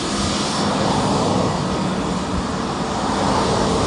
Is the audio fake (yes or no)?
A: no